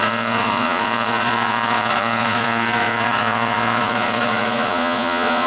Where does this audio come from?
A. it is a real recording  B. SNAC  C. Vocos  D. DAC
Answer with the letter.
C